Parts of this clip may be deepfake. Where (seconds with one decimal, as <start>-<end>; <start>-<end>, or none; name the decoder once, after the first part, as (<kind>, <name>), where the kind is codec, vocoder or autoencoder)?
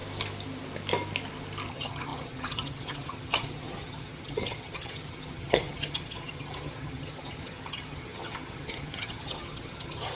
1.7-10.1 (vocoder, HiFi-GAN)